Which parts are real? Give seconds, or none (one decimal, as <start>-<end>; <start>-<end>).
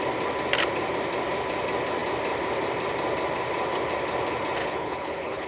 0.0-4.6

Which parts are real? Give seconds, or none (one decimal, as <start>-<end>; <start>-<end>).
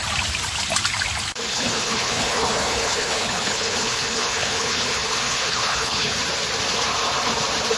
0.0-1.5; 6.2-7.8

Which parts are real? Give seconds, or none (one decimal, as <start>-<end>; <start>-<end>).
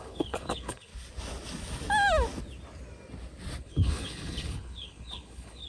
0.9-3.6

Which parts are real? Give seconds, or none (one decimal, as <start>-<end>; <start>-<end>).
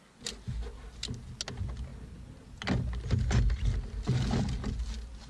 0.0-5.3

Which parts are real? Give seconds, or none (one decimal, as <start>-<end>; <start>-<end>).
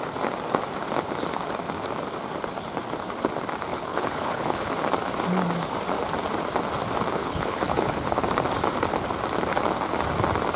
0.0-3.7; 4.7-7.2; 8.2-10.6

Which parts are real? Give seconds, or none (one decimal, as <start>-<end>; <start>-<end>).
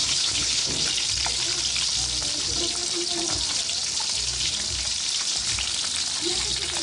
0.7-6.8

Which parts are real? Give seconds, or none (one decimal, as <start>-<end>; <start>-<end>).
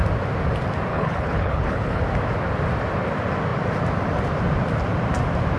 0.0-0.9; 2.0-5.6